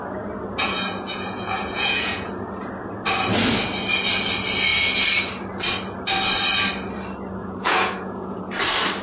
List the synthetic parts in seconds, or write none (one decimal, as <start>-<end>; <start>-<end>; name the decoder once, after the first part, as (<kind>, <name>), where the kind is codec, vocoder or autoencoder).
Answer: 0.6-2.3 (vocoder, Vocos); 7.4-8.4